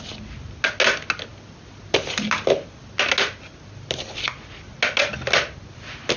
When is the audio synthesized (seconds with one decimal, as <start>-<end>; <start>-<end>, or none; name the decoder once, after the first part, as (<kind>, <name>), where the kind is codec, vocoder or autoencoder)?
none